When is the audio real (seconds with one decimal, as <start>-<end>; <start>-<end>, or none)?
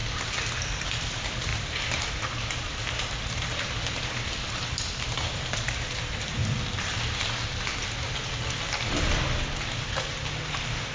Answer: 0.0-1.1; 6.4-7.2; 7.7-10.4